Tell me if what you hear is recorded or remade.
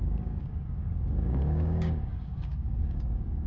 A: remade